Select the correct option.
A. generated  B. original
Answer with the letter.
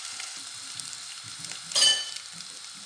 B